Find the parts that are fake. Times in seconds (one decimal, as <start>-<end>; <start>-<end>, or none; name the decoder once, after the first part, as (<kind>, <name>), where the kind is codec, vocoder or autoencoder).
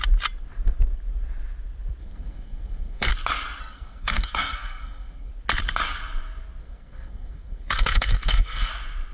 2.0-3.1 (codec, SNAC); 3.6-5.3; 6.6-8.7